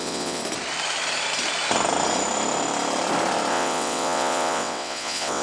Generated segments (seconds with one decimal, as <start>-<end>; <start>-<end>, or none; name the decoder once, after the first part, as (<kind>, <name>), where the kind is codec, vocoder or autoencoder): 0.0-0.4 (vocoder, WaveNeXt); 3.5-5.4